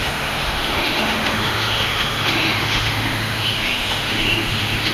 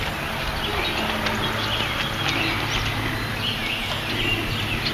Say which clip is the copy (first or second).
first